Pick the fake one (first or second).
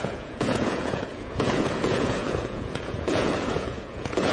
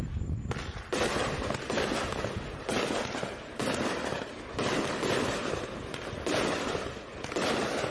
first